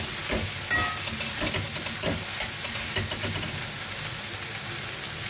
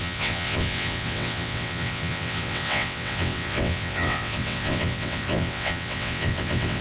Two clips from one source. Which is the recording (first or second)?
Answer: first